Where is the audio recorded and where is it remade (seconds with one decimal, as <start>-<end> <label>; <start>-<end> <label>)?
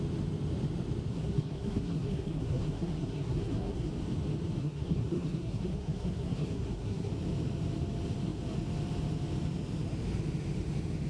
0.0-1.1 recorded; 1.1-3.9 remade; 3.9-4.6 recorded; 4.6-7.1 remade; 7.1-11.1 recorded